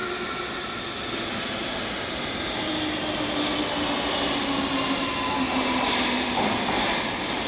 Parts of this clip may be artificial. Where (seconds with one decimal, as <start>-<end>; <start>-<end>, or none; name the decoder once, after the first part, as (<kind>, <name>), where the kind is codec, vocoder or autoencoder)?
none